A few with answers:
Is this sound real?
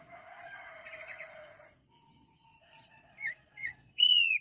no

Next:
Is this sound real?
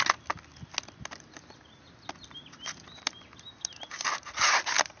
yes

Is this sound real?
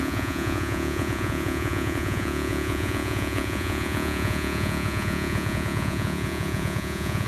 no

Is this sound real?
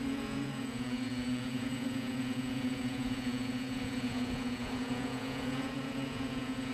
no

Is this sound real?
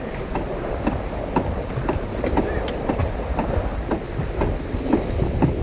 yes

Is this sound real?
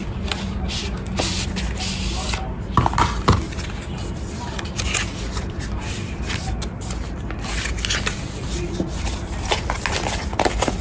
yes